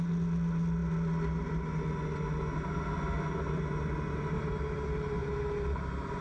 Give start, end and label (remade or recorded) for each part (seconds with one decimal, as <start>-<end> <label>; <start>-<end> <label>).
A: 0.0-5.2 recorded; 5.2-6.2 remade